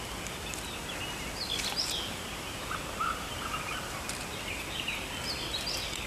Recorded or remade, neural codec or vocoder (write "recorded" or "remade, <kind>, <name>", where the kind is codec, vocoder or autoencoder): recorded